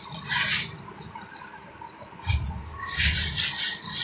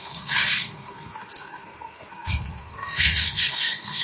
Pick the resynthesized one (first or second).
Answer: second